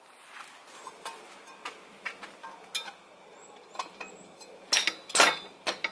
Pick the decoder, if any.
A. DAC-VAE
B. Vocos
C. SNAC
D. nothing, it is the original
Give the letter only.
D